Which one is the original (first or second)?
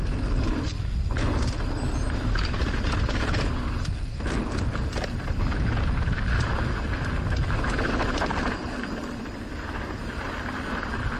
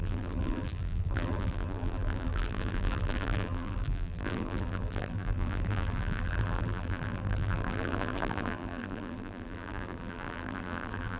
first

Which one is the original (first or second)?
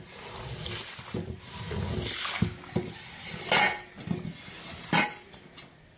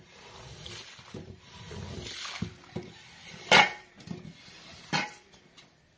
first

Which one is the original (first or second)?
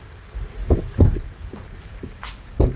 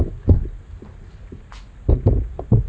second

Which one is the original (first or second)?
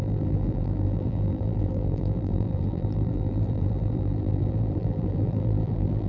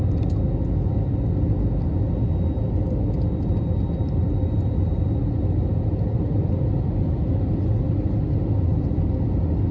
second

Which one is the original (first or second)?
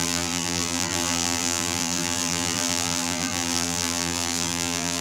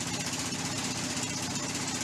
second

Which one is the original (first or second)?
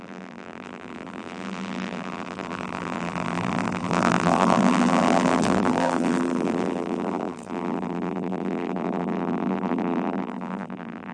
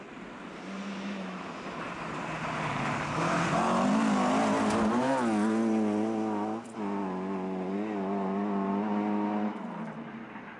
second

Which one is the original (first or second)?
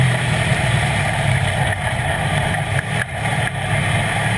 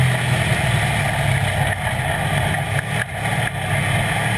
second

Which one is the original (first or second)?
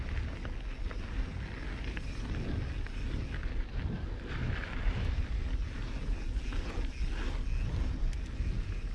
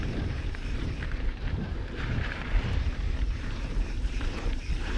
first